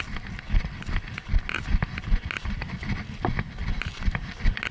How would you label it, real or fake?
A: real